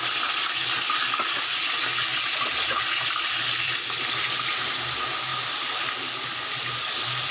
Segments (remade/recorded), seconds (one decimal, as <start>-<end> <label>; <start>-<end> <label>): 0.0-7.3 recorded